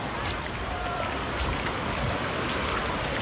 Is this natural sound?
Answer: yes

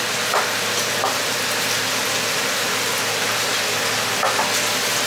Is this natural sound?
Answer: yes